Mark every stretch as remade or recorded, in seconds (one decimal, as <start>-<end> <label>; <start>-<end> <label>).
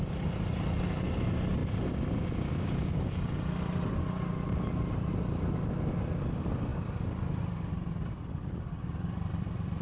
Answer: 0.0-9.8 recorded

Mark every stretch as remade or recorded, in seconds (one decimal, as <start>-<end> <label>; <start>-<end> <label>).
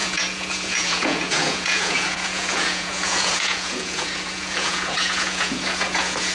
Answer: 0.0-6.3 remade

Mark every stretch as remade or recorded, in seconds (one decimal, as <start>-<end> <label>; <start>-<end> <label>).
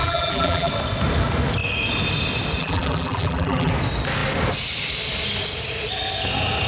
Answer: 0.0-0.7 remade; 0.7-2.6 recorded; 2.6-3.7 remade; 3.7-6.7 recorded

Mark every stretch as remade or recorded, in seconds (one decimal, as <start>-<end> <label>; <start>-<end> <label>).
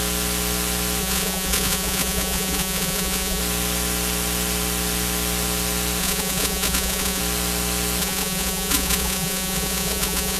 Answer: 0.0-1.0 recorded; 1.0-3.4 remade; 3.4-6.0 recorded; 6.0-7.2 remade; 7.2-8.0 recorded; 8.0-10.4 remade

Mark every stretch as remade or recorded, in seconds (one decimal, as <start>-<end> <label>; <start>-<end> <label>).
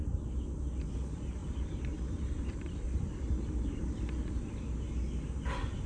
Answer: 0.0-1.4 recorded; 1.4-4.5 remade; 4.5-5.9 recorded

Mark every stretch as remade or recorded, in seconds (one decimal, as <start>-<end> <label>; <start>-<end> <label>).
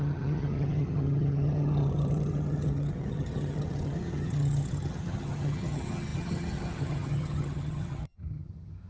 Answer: 0.0-8.9 remade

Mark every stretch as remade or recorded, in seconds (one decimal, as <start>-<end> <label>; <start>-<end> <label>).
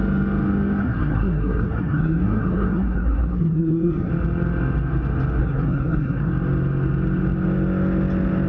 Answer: 0.0-0.8 recorded; 0.8-4.1 remade; 4.1-5.4 recorded; 5.4-6.3 remade; 6.3-8.5 recorded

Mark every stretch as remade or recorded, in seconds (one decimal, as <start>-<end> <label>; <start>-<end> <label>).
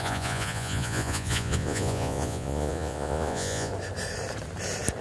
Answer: 0.0-3.7 remade; 3.7-5.0 recorded